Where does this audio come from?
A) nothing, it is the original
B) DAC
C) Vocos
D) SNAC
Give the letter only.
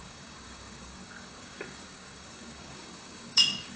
B